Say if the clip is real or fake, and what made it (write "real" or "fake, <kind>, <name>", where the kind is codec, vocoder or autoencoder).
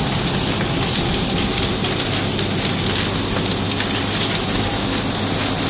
real